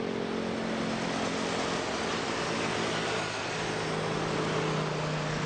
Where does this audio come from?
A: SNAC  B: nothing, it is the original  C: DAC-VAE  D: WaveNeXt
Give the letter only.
B